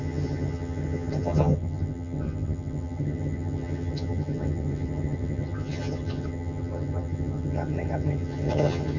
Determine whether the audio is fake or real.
fake